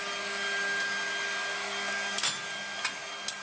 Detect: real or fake real